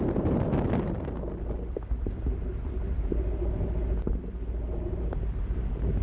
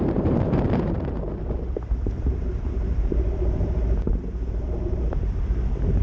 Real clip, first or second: first